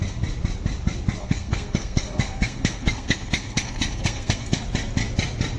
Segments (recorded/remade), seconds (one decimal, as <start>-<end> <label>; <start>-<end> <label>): 0.0-1.2 recorded; 1.2-4.6 remade; 4.6-5.6 recorded